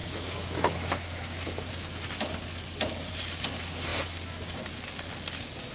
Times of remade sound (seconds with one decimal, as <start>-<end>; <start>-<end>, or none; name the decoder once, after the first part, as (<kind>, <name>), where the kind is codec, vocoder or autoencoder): 0.0-1.7 (autoencoder, DAC-VAE)